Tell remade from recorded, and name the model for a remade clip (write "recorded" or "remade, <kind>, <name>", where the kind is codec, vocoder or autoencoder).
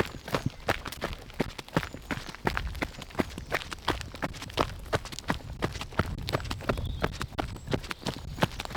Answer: recorded